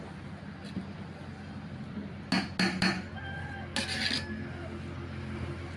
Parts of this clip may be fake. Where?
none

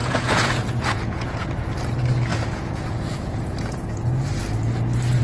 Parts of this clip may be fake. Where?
0.0-1.6; 2.3-4.0

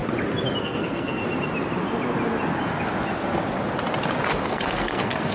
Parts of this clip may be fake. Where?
0.6-1.2; 4.4-5.3

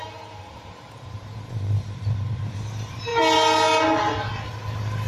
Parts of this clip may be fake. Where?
0.0-3.1

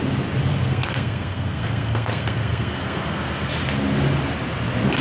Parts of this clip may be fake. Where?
0.5-3.5

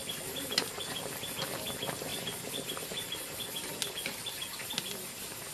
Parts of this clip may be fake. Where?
none